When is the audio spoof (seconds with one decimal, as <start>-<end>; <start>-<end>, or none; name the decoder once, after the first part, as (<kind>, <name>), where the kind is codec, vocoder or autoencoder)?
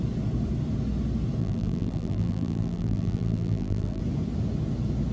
1.4-4.0 (vocoder, BigVGAN v2)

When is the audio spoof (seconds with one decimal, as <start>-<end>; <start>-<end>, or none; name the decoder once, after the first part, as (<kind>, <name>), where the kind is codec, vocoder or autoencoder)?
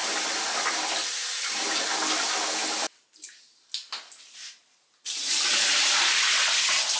none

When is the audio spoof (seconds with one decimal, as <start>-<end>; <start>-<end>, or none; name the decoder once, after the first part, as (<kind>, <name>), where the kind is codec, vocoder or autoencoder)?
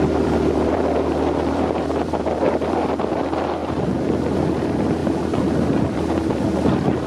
0.0-3.6 (vocoder, BigVGAN v2); 4.3-5.0; 5.8-7.1